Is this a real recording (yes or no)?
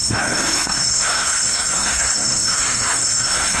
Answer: no